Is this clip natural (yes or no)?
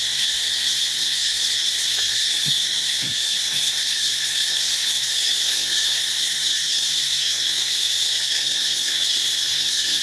no